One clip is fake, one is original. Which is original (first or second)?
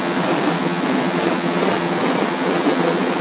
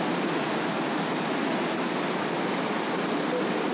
second